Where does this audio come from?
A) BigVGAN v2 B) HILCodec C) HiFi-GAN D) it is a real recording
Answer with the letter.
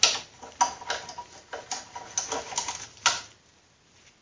D